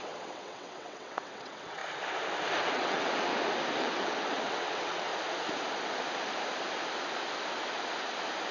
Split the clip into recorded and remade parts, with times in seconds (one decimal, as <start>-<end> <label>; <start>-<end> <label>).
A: 0.0-1.8 remade; 1.8-2.6 recorded; 2.6-3.3 remade; 3.3-3.8 recorded; 3.8-5.1 remade; 5.1-8.5 recorded